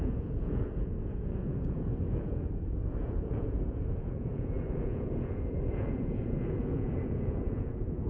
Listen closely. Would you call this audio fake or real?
fake